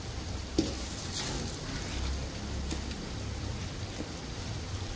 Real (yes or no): yes